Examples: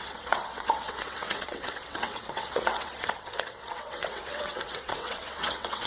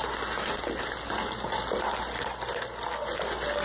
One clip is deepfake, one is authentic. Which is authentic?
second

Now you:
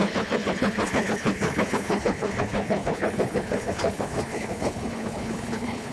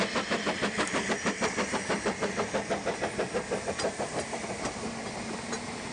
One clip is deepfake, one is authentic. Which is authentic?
second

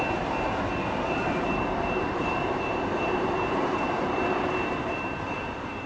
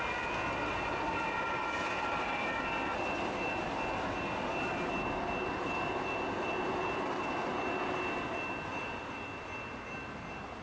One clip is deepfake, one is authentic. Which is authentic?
second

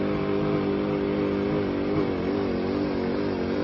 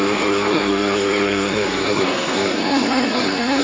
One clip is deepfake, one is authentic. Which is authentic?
first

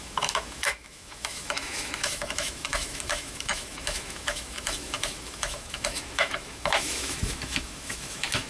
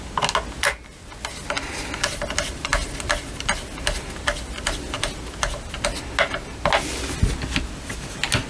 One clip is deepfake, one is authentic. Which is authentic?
second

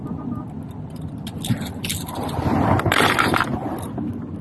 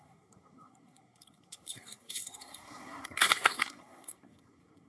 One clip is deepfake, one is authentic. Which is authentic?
first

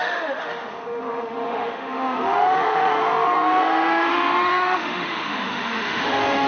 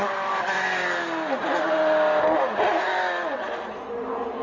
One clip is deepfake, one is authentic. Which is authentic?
second